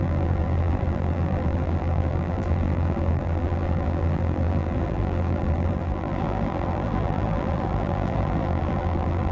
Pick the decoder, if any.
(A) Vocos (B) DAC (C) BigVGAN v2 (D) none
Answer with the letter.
C